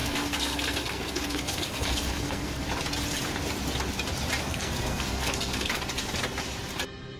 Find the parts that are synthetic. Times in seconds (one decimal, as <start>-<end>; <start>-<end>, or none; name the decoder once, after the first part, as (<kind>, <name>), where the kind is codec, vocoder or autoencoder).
0.0-2.6 (codec, SNAC); 4.4-5.8